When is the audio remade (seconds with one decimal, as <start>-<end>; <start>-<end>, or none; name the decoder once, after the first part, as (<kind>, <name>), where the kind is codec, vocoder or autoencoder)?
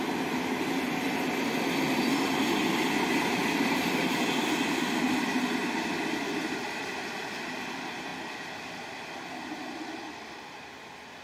none